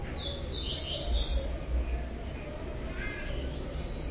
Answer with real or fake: real